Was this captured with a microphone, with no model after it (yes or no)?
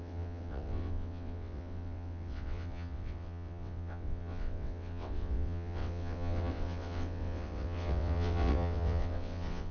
no